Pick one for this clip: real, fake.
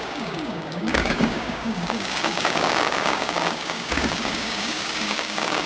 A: fake